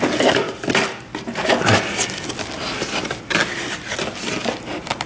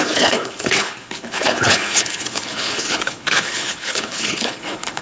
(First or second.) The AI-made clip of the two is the second